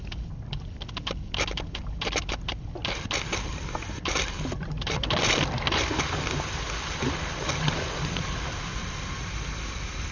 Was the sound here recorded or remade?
recorded